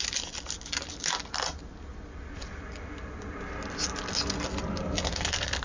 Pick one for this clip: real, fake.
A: real